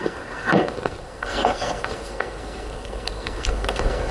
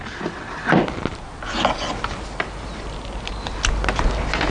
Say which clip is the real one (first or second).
second